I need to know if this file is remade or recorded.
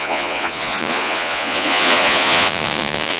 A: remade